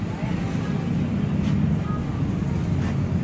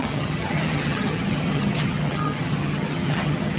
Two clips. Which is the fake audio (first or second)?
second